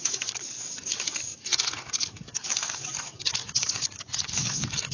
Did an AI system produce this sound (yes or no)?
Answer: yes